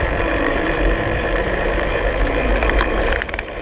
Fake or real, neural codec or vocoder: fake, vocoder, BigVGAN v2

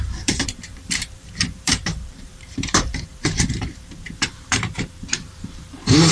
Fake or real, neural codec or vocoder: fake, vocoder, BigVGAN v2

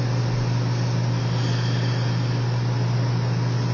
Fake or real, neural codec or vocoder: real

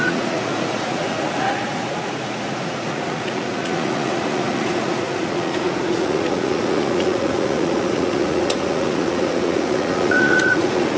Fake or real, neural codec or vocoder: fake, vocoder, Vocos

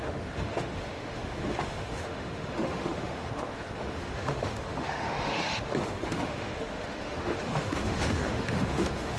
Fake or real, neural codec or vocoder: fake, autoencoder, DAC-VAE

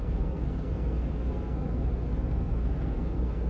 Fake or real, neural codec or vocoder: fake, codec, SNAC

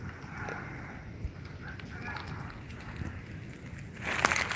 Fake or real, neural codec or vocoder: real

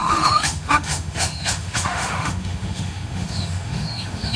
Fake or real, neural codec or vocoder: fake, autoencoder, DAC-VAE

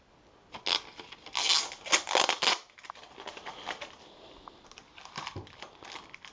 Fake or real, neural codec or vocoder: real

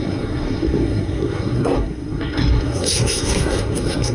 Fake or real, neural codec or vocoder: fake, codec, SNAC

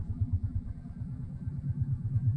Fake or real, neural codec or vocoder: fake, vocoder, BigVGAN v2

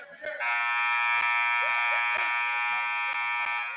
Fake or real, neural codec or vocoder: real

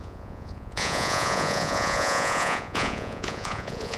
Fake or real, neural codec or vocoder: fake, vocoder, Vocos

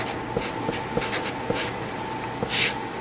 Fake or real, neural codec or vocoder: real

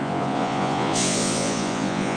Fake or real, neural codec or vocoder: fake, vocoder, Vocos